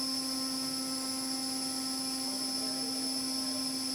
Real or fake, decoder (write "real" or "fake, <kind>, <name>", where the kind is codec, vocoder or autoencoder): real